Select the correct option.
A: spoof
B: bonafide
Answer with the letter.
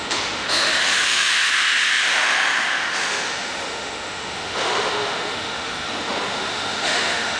A